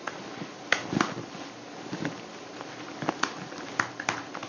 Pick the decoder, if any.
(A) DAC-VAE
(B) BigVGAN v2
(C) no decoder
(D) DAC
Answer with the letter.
C